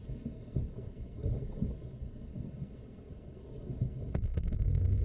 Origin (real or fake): fake